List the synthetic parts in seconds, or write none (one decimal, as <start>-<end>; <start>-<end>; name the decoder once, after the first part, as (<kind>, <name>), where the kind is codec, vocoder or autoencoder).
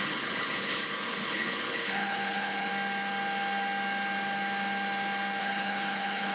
0.0-2.7 (codec, HILCodec); 5.4-6.3